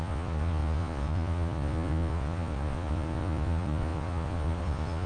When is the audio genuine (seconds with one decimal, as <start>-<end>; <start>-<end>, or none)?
none